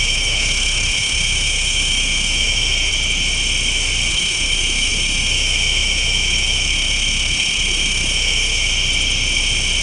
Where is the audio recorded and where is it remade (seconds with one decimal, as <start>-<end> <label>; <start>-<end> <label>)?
0.0-2.9 remade; 2.9-4.1 recorded; 4.1-8.7 remade; 8.7-9.8 recorded